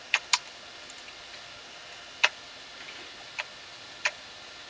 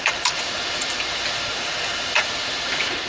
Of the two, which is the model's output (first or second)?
second